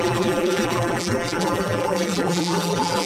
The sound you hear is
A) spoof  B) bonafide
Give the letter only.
A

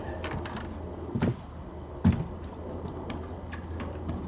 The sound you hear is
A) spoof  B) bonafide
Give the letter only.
B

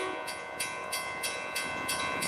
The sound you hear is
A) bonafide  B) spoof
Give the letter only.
B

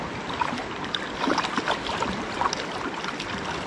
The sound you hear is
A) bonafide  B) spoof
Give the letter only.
A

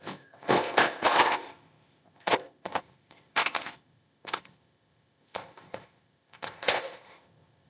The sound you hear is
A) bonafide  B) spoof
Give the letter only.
B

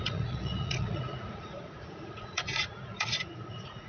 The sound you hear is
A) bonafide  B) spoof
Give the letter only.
B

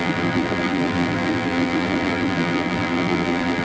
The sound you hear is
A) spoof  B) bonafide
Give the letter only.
A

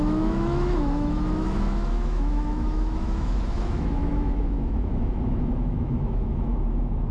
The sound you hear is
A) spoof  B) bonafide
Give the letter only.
A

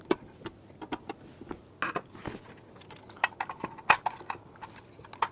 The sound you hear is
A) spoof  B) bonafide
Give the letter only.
B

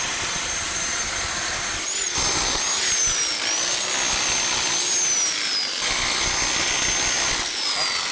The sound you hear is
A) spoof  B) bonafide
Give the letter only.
B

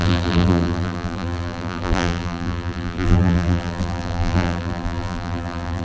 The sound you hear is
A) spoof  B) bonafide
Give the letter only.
A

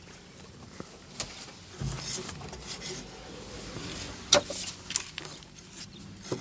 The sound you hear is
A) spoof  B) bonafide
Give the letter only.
B